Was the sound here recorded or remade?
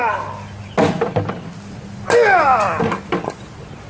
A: recorded